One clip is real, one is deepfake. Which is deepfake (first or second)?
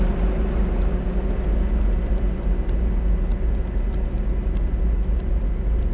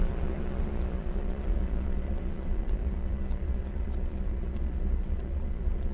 second